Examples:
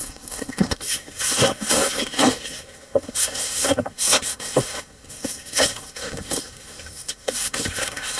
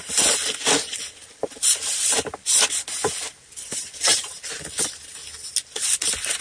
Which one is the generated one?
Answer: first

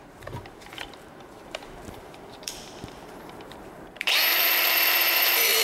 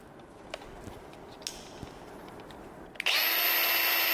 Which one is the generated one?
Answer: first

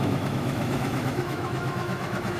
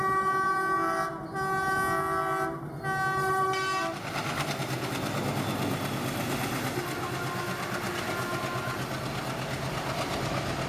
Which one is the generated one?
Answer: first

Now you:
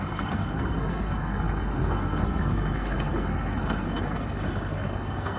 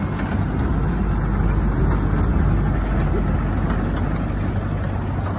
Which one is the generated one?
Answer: first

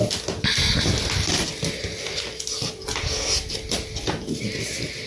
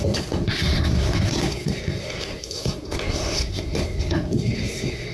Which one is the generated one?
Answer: second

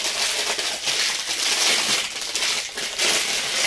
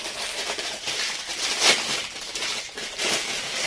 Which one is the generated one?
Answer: second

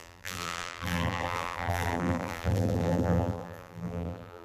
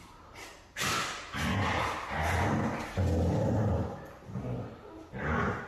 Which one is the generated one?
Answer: first